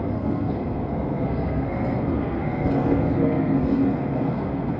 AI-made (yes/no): yes